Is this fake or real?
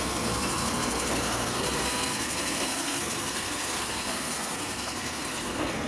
fake